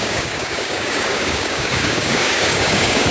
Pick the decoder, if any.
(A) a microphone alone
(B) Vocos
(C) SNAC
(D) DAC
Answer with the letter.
D